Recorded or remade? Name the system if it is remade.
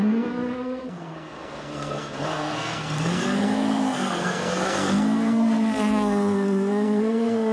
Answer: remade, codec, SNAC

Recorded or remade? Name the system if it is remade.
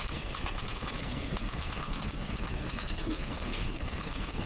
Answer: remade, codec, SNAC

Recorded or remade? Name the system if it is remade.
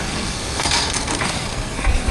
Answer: remade, codec, SNAC